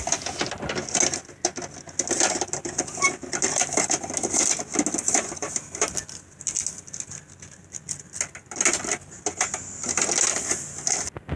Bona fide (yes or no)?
yes